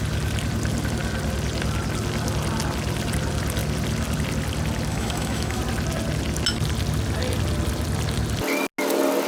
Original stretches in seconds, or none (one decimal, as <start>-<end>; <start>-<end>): 0.0-4.9; 5.6-9.3